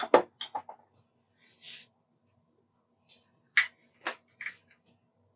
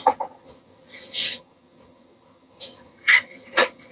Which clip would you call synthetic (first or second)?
second